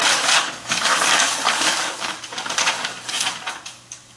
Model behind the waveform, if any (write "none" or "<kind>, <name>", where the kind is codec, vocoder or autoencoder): codec, DAC